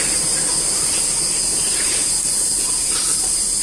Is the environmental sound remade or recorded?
recorded